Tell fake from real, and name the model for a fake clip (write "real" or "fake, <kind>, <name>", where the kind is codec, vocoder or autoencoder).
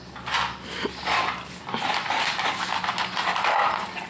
real